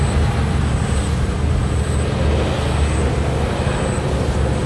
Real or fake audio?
real